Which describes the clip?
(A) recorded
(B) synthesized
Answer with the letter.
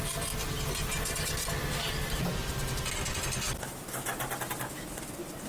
A